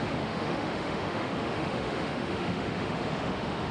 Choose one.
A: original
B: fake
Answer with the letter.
B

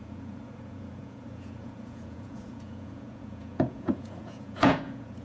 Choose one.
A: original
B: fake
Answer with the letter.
B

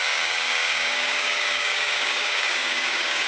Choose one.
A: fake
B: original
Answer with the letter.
A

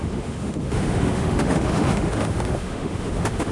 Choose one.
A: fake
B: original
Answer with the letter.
A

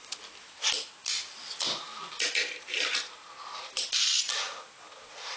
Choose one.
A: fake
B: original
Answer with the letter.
B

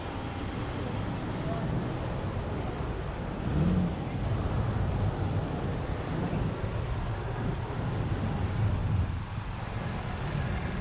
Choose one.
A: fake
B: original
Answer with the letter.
B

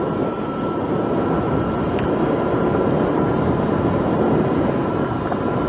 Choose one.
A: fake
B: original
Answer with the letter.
B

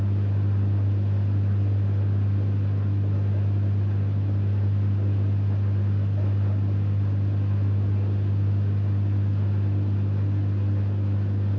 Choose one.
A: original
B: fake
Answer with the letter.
A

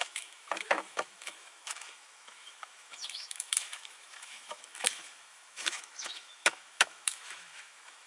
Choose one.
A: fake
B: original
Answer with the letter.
A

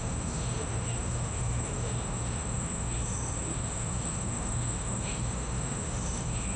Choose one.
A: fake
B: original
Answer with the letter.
A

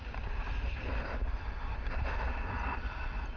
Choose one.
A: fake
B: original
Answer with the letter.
B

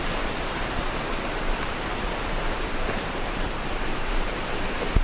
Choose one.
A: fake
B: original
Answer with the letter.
A